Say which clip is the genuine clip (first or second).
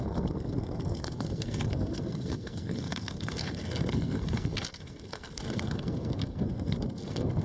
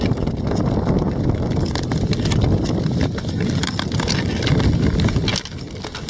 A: second